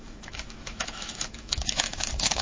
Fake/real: fake